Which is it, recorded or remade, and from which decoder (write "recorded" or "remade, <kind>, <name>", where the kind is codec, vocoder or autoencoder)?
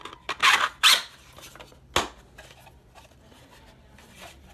recorded